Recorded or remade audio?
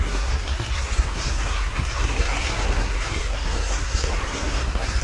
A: remade